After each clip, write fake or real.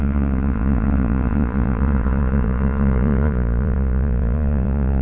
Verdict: fake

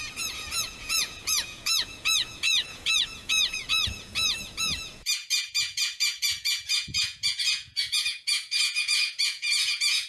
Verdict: fake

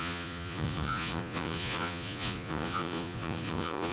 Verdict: fake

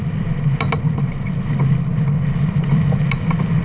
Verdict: real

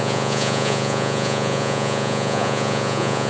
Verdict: fake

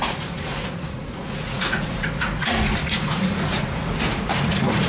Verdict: fake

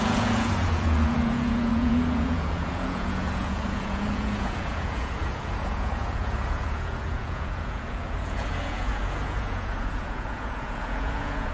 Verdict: fake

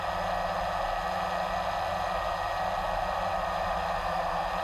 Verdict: real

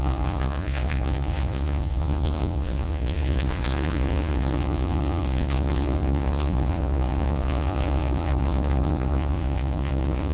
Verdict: fake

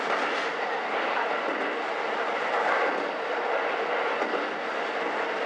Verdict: real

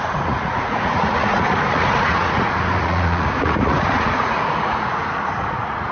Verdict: fake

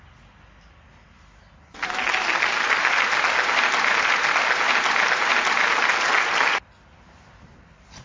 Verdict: real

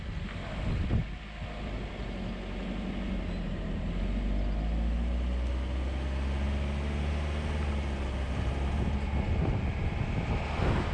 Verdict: real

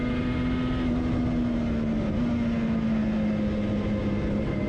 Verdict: real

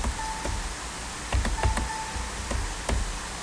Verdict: real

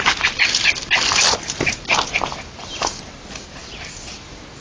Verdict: real